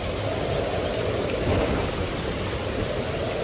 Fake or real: real